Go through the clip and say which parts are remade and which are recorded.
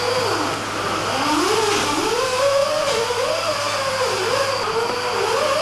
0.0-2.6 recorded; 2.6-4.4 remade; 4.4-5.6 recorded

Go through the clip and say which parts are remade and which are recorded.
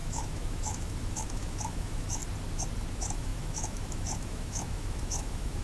0.0-2.2 remade; 2.2-2.9 recorded; 2.9-5.6 remade